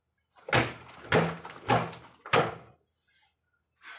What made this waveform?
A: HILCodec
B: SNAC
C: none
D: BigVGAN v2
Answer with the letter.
C